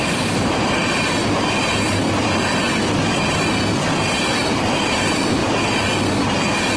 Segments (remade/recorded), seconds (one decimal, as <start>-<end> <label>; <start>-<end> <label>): 0.0-0.8 remade; 0.8-4.4 recorded; 4.4-5.4 remade; 5.4-6.8 recorded